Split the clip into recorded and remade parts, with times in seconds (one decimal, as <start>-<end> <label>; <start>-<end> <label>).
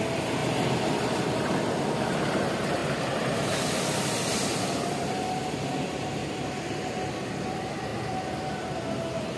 0.0-2.8 recorded; 2.8-5.4 remade; 5.4-9.4 recorded